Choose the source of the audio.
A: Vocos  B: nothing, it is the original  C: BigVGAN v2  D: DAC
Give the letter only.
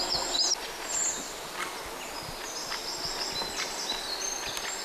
B